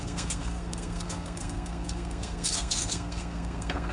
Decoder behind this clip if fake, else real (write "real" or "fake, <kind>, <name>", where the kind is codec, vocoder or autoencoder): fake, codec, SNAC